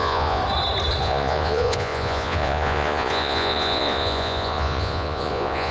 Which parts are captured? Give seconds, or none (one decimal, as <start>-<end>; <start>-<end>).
0.4-1.0